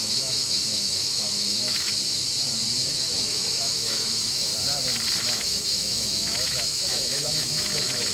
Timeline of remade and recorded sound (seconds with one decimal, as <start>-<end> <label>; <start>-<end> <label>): 0.0-1.9 remade; 1.9-2.9 recorded; 2.9-4.5 remade; 4.5-5.2 recorded; 5.2-8.1 remade